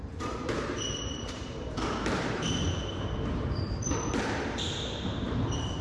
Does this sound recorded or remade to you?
remade